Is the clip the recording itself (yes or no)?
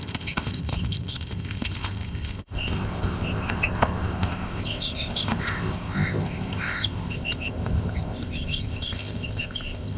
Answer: no